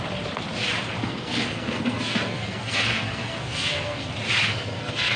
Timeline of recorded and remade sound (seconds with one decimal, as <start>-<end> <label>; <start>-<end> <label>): 0.0-1.0 recorded; 1.0-4.1 remade; 4.1-4.5 recorded; 4.5-5.2 remade